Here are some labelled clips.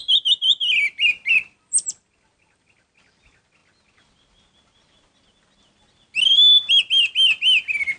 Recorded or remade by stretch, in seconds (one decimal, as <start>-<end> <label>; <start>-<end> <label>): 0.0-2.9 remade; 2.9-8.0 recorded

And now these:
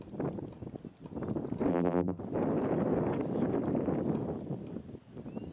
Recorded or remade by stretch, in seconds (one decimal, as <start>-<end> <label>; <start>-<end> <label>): 0.0-1.7 recorded; 1.7-2.2 remade; 2.2-5.5 recorded

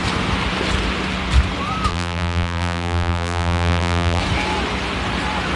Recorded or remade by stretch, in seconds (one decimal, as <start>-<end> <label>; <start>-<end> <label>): 0.0-1.9 recorded; 1.9-4.2 remade; 4.2-5.6 recorded